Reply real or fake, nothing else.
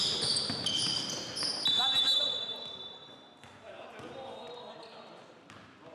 real